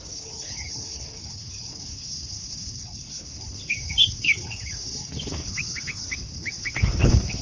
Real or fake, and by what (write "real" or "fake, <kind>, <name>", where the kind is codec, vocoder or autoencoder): fake, codec, HILCodec